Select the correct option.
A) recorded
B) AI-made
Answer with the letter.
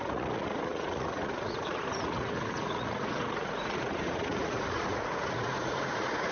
B